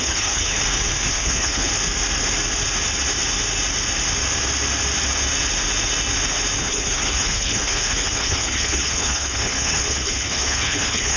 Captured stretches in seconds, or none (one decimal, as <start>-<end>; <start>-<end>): 0.6-1.1; 1.7-6.6